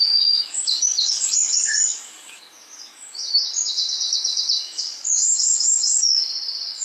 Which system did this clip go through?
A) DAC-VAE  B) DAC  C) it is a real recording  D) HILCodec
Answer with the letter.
B